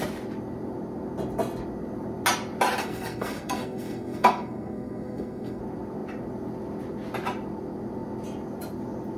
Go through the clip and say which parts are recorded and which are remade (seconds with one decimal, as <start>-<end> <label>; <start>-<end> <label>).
0.0-2.8 recorded; 2.8-5.6 remade; 5.6-9.2 recorded